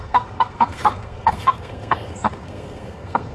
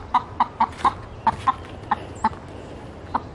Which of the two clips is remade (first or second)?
first